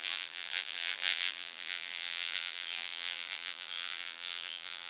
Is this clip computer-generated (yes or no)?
yes